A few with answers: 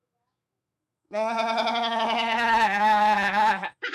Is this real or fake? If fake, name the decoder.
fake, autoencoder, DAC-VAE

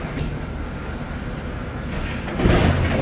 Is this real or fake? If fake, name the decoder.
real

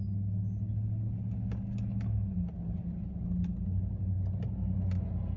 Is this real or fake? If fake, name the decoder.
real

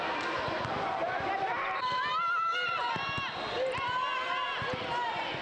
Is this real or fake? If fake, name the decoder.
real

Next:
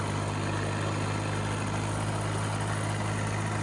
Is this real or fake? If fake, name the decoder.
real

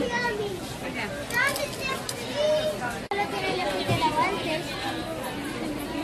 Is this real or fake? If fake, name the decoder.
real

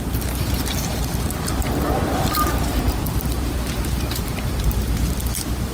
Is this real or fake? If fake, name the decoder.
real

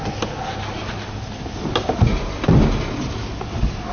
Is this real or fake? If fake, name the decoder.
real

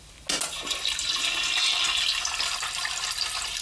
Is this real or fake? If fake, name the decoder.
real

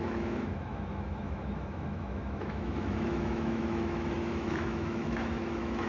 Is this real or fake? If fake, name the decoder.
fake, autoencoder, DAC-VAE